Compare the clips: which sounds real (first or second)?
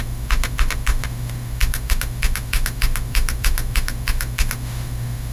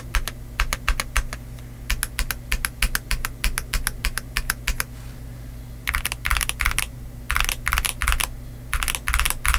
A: second